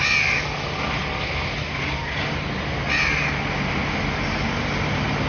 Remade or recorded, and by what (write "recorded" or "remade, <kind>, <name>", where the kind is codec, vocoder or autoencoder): recorded